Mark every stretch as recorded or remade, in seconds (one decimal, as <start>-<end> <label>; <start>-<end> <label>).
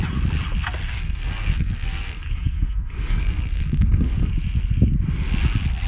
0.0-0.8 recorded; 0.8-4.3 remade; 4.3-5.9 recorded